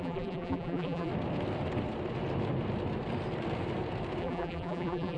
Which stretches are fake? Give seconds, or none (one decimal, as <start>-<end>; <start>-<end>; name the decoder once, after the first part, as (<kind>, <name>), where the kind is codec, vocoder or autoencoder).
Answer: 0.0-1.1 (vocoder, BigVGAN v2); 4.2-5.2